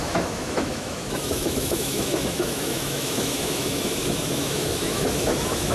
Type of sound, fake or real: fake